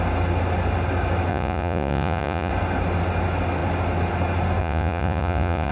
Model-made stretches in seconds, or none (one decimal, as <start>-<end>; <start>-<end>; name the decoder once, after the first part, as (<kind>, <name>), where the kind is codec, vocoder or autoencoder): 1.3-2.5 (vocoder, Vocos); 4.6-5.7